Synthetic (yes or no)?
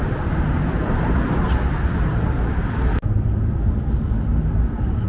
yes